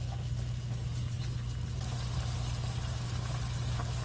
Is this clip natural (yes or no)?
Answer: yes